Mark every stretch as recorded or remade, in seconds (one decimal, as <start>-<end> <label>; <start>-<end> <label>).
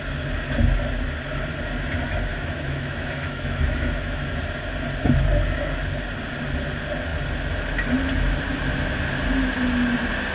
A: 0.0-2.3 recorded; 2.3-4.3 remade; 4.3-10.3 recorded